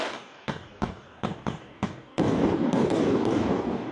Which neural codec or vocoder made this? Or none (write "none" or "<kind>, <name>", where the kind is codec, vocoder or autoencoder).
codec, DAC